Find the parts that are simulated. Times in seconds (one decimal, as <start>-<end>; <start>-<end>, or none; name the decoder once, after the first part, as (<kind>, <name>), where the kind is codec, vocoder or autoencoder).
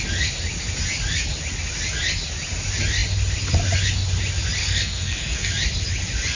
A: 4.6-5.5 (codec, SNAC)